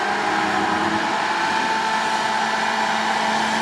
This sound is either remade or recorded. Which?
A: recorded